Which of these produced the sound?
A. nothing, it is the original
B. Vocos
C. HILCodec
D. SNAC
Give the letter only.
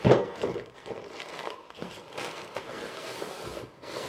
D